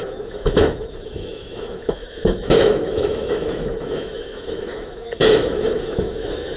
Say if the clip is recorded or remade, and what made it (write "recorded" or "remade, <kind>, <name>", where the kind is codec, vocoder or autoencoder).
remade, autoencoder, DAC-VAE